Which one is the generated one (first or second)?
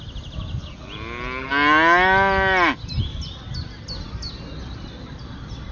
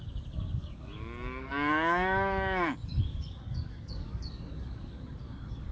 second